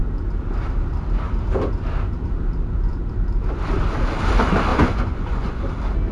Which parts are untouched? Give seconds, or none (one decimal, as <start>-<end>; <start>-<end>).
0.0-4.7; 5.6-6.1